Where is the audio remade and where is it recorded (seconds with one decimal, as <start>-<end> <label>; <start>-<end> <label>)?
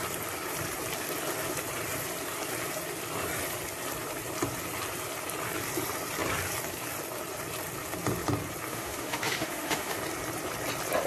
0.0-8.7 recorded; 8.7-10.0 remade; 10.0-11.1 recorded